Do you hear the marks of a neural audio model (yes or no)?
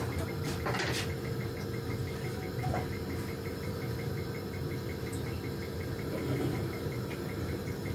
no